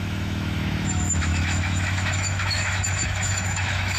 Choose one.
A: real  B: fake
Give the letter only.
B